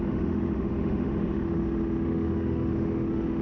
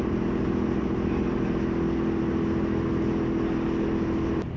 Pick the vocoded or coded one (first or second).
first